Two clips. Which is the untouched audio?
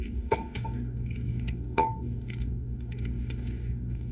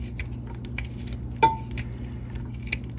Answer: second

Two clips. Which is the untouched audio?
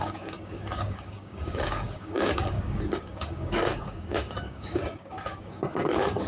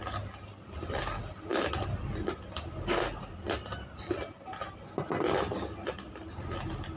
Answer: second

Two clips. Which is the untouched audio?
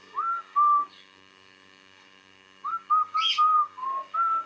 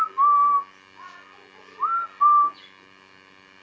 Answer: second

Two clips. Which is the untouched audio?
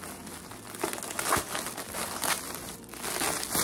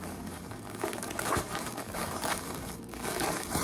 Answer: first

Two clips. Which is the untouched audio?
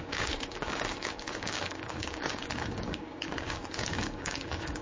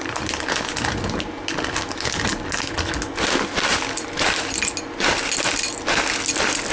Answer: second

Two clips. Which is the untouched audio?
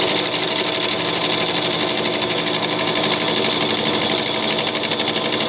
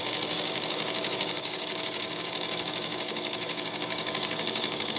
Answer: first